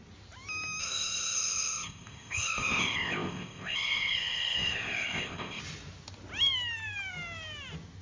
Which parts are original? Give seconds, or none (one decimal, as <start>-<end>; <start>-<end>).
0.0-0.8; 5.6-8.0